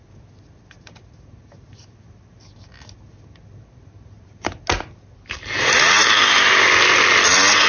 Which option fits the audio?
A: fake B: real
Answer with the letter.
B